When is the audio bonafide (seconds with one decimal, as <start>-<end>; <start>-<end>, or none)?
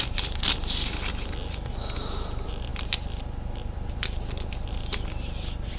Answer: 0.0-5.8